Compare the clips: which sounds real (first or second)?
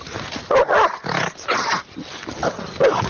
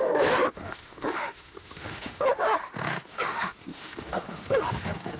first